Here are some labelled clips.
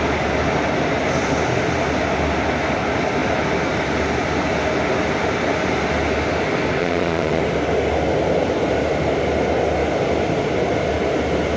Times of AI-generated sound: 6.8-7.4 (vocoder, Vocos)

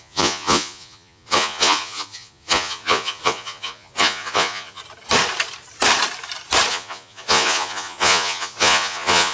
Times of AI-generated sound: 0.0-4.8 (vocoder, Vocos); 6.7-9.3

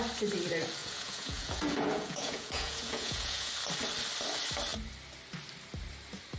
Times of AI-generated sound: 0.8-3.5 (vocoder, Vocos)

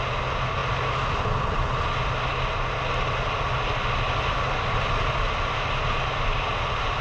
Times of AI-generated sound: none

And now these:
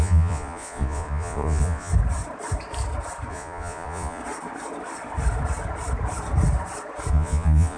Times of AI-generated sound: 0.0-1.9 (vocoder, Vocos); 3.3-4.2; 7.1-7.8

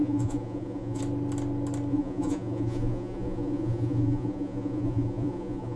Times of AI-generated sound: 0.0-1.0 (vocoder, Vocos); 1.9-5.8

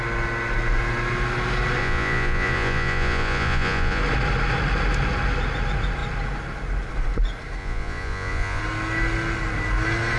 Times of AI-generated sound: 1.8-4.0 (vocoder, Vocos); 7.6-8.6

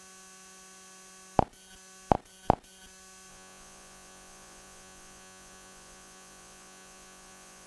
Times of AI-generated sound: 3.3-7.7 (vocoder, Vocos)